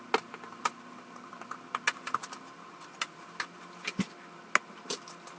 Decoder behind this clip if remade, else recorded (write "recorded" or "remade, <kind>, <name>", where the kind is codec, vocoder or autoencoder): recorded